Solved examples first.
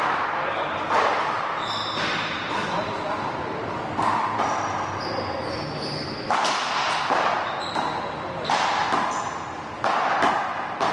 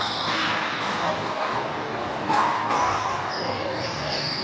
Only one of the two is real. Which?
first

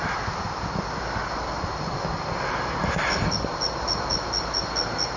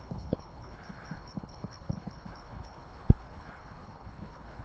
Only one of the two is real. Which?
first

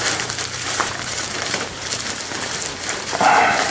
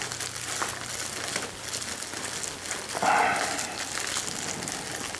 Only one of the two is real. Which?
second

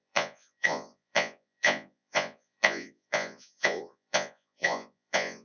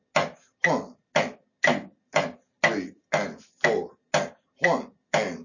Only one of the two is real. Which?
second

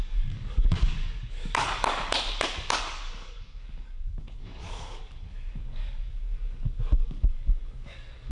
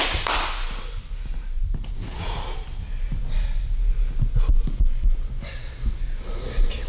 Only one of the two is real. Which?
second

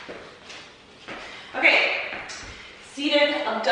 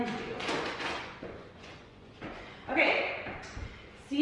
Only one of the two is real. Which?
first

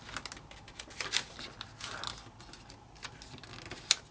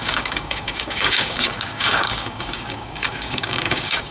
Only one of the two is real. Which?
first